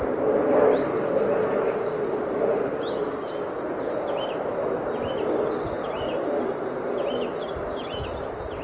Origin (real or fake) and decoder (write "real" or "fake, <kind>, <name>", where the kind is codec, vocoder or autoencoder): real